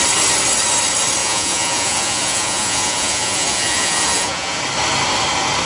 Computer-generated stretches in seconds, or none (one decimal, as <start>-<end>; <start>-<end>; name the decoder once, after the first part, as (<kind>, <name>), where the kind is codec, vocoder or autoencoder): 1.2-4.6 (vocoder, Vocos)